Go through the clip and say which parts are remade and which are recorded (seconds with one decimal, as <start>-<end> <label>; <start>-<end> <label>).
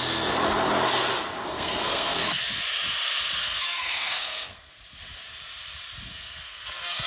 0.0-1.4 recorded; 1.4-2.4 remade; 2.4-3.4 recorded; 3.4-4.8 remade; 4.8-6.1 recorded; 6.1-7.1 remade